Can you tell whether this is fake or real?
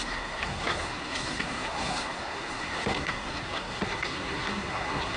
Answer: fake